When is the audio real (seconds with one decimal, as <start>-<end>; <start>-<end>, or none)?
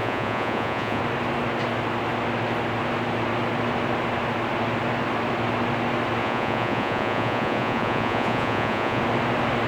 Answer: 1.0-6.2; 9.0-9.7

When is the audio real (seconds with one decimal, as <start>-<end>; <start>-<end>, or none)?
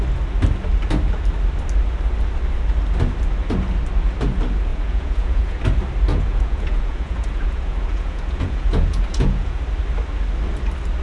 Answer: 0.0-4.7; 5.6-6.1; 9.6-11.0